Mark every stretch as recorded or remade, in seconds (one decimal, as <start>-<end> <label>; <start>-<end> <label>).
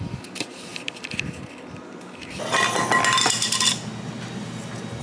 0.0-5.0 recorded